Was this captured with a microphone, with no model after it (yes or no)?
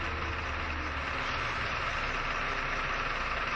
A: yes